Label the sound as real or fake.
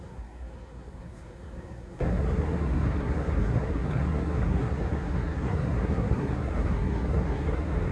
fake